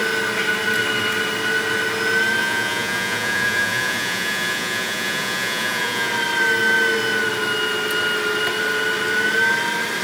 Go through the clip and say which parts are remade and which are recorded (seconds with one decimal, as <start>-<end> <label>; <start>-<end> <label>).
0.0-2.4 recorded; 2.4-6.1 remade; 6.1-10.0 recorded